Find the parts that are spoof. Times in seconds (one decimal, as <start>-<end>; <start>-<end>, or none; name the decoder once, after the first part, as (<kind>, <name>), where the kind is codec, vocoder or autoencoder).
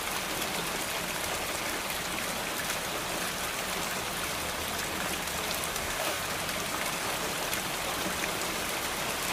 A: 5.7-6.2 (codec, DAC)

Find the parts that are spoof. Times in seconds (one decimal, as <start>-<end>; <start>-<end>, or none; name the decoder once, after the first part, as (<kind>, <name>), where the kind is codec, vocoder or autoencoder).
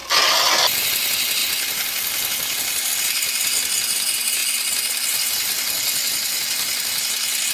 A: none